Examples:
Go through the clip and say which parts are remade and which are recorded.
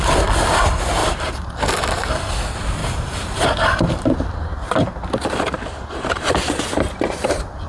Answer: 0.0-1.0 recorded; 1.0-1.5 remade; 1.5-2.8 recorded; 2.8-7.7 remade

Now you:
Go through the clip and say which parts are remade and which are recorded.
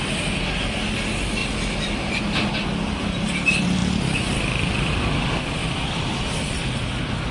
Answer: 0.0-1.4 recorded; 1.4-2.2 remade; 2.2-5.6 recorded; 5.6-6.5 remade; 6.5-7.3 recorded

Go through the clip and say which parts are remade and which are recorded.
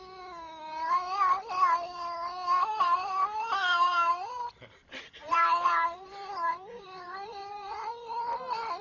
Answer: 0.0-2.7 recorded; 2.7-7.9 remade; 7.9-8.8 recorded